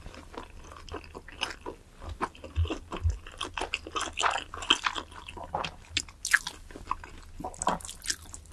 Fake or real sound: real